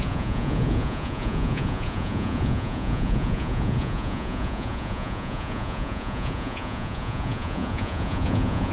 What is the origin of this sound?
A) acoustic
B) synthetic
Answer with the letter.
B